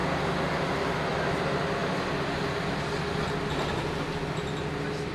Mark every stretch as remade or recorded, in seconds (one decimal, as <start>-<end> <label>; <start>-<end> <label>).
0.0-5.1 recorded